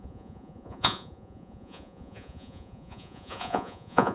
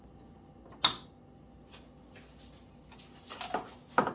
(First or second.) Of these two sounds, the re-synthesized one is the first